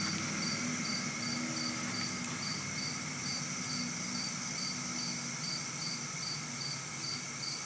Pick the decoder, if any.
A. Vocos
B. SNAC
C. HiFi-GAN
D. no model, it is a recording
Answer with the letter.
D